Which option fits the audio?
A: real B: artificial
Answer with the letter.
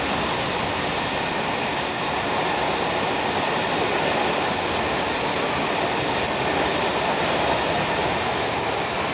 A